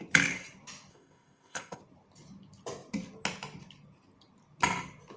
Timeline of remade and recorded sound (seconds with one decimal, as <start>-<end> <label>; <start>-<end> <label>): 0.0-0.9 recorded; 0.9-1.8 remade; 1.8-5.2 recorded